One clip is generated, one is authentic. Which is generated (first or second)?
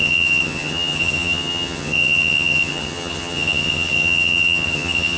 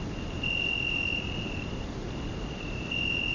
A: first